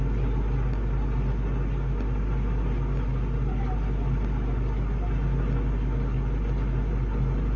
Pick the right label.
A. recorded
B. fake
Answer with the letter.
A